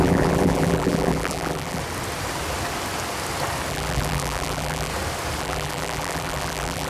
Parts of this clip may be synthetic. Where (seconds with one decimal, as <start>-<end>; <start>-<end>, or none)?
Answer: 0.0-1.8; 3.7-4.9; 5.4-6.9

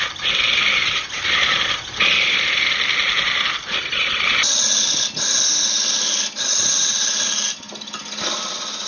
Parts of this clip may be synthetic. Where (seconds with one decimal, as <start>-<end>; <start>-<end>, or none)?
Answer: 0.8-2.3

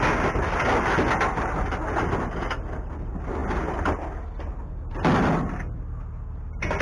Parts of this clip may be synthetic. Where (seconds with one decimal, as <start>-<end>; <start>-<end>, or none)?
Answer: none